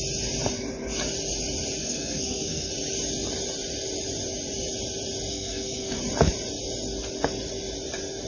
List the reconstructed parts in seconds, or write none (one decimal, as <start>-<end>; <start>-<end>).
1.8-2.7; 5.3-6.0